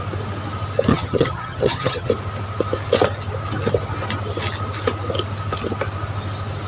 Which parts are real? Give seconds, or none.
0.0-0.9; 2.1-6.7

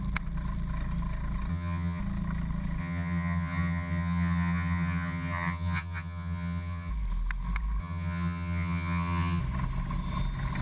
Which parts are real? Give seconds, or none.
0.0-1.5; 2.0-2.8; 6.9-7.8; 9.4-10.6

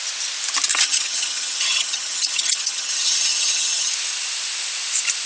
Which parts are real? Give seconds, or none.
0.0-0.7; 3.9-5.3

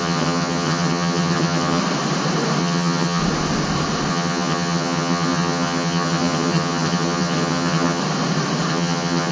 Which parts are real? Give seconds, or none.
1.8-2.6; 3.2-4.1; 8.0-8.7

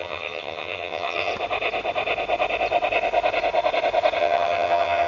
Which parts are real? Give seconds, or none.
1.3-4.2

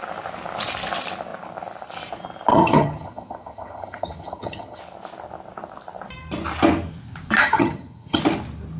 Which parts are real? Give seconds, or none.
0.0-2.5; 4.8-7.4; 8.2-8.8

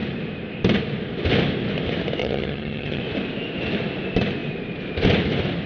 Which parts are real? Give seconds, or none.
0.0-2.2; 3.0-5.7

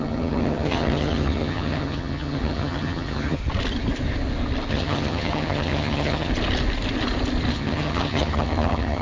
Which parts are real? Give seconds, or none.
3.4-4.7; 6.3-7.5